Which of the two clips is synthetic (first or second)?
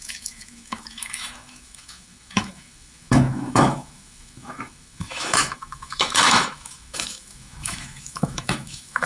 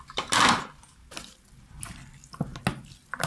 first